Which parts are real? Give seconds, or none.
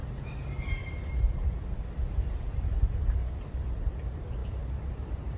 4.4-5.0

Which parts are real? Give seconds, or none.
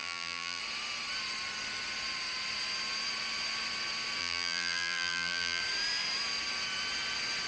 0.6-4.2; 5.6-7.5